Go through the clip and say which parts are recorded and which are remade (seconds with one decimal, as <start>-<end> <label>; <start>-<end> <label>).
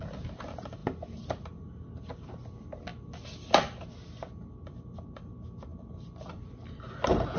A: 0.0-7.4 recorded